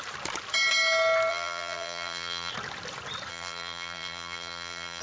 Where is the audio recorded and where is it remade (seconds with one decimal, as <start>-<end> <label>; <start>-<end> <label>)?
0.0-1.3 recorded; 1.3-2.5 remade; 2.5-3.3 recorded; 3.3-5.0 remade